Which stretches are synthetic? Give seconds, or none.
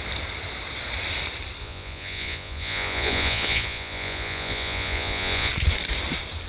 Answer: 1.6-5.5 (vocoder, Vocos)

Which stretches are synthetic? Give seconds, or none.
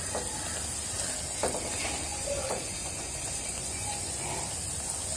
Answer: 2.1-4.3 (vocoder, Vocos)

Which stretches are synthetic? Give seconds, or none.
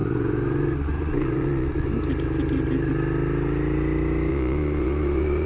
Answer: 0.0-1.9 (vocoder, Vocos); 4.3-5.5